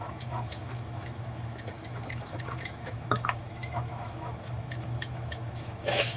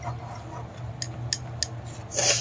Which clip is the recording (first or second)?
second